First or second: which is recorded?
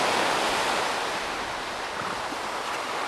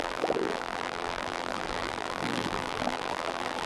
first